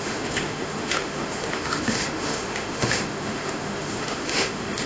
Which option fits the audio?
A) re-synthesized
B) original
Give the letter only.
A